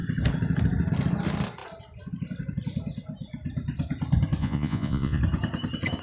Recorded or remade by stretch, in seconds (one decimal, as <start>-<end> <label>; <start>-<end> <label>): 0.0-4.4 recorded; 4.4-5.2 remade; 5.2-6.0 recorded

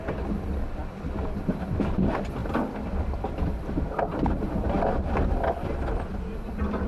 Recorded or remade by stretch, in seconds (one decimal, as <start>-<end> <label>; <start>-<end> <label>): 0.0-6.9 recorded

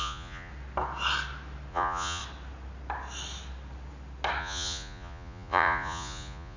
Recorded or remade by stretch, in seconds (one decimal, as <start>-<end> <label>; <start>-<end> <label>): 0.0-0.5 remade; 0.5-1.7 recorded; 1.7-2.2 remade; 2.2-4.4 recorded; 4.4-6.6 remade

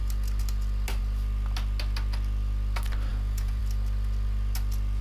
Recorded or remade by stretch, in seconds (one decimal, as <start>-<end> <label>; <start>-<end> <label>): 0.0-3.1 recorded; 3.1-3.6 remade; 3.6-5.0 recorded

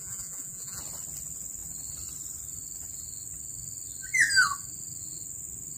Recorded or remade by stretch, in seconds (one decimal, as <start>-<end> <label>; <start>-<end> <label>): 0.0-0.8 remade; 0.8-5.8 recorded

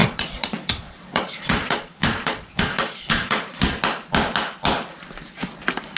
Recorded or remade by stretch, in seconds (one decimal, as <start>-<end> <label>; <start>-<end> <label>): 0.0-3.6 remade; 3.6-6.0 recorded

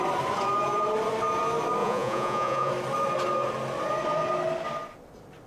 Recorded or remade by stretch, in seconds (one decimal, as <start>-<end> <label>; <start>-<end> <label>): 0.0-1.8 recorded; 1.8-2.7 remade; 2.7-5.5 recorded